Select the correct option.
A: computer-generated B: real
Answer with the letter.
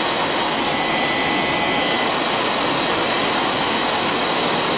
B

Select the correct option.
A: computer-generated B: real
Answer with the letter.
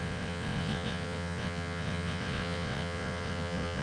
A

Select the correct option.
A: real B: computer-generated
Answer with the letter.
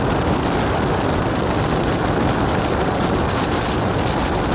A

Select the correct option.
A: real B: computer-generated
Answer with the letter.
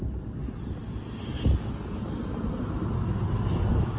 A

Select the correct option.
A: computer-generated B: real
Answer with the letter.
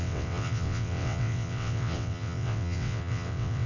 A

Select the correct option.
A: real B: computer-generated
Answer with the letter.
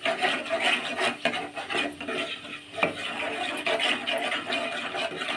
A